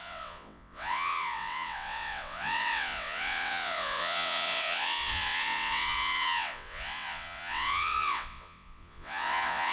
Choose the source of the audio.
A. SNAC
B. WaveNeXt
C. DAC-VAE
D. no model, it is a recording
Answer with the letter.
B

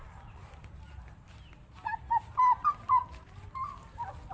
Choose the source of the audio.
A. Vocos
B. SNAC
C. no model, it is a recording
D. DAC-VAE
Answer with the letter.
C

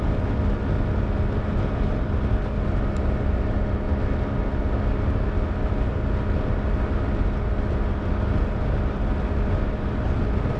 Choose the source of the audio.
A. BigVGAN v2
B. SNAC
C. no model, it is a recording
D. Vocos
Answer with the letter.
C